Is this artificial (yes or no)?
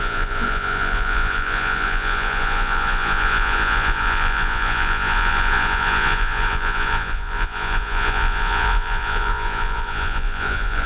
yes